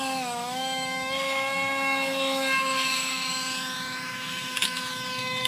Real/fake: fake